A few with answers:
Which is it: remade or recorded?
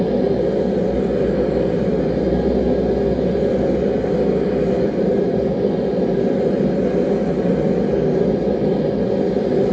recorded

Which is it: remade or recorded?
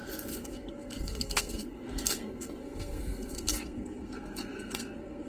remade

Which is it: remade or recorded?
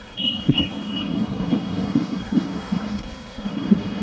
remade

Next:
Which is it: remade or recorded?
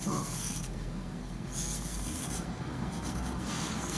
remade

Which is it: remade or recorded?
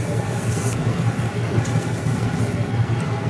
remade